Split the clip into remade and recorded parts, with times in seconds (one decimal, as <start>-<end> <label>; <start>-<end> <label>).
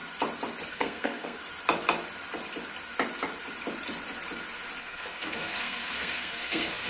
0.0-0.7 recorded; 0.7-1.4 remade; 1.4-4.8 recorded; 4.8-6.9 remade